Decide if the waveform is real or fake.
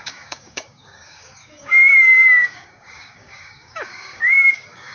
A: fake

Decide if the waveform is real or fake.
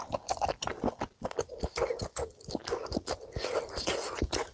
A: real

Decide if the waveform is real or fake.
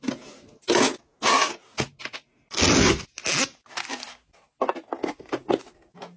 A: real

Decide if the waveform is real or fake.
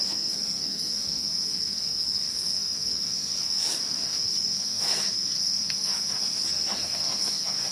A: fake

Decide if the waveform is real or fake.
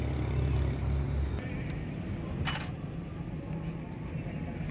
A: real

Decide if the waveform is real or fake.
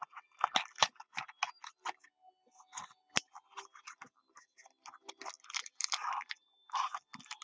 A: real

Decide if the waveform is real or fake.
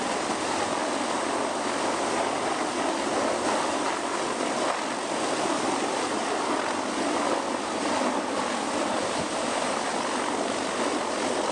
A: real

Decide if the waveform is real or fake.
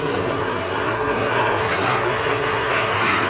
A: fake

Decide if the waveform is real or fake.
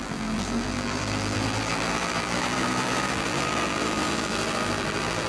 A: fake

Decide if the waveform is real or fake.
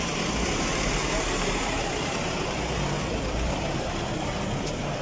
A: fake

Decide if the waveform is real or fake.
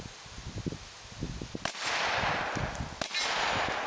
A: real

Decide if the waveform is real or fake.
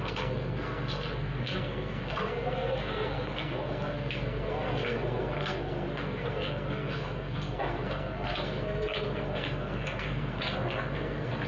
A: fake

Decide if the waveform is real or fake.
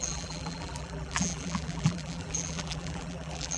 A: fake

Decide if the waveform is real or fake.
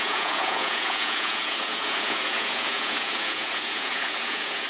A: fake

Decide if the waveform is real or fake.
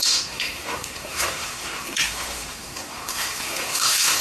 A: fake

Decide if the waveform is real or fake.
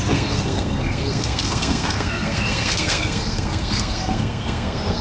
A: fake